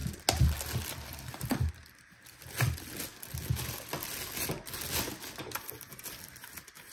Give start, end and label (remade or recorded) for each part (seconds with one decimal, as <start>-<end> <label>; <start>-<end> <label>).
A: 0.0-6.9 recorded